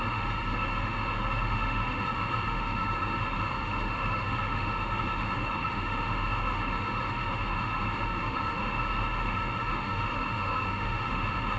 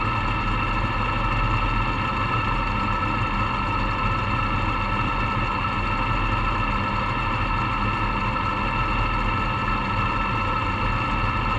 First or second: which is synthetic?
first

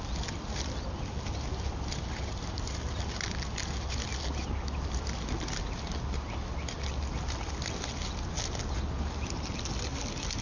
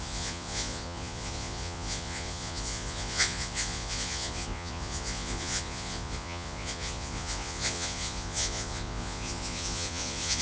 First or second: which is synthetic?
second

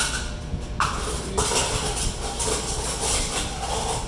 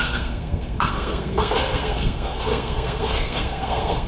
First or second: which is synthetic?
second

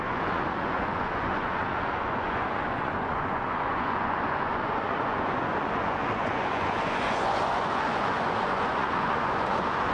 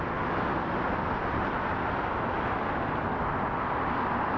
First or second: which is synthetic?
first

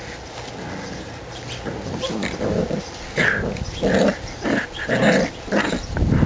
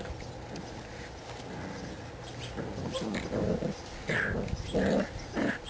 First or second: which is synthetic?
first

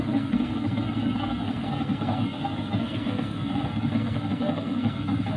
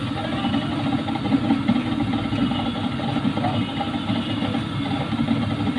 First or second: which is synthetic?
first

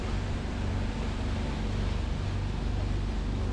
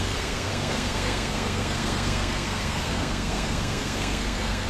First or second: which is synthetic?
second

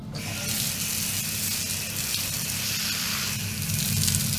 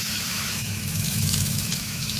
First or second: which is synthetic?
second